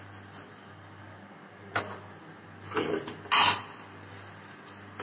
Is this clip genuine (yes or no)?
yes